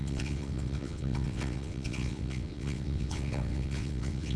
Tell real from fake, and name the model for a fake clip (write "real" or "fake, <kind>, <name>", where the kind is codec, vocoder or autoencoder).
fake, vocoder, WaveNeXt